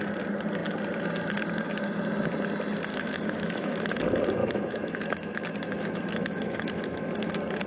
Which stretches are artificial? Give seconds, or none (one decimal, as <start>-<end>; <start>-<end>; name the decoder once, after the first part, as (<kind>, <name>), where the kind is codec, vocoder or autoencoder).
2.9-4.0 (autoencoder, DAC-VAE); 4.4-7.3